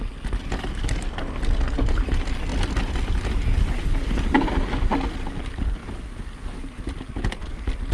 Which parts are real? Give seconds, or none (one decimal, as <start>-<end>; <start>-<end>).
0.0-7.9